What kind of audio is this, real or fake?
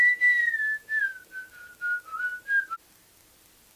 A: real